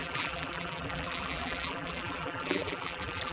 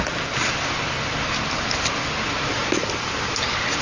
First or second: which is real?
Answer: second